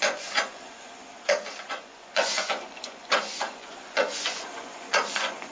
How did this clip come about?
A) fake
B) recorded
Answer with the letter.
A